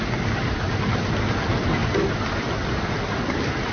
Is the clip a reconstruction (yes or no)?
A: no